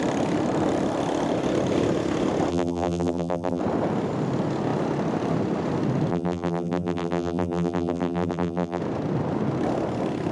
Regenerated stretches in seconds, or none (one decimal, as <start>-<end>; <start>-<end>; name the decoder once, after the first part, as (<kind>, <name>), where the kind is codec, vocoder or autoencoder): 2.5-3.6 (vocoder, BigVGAN v2); 6.1-8.8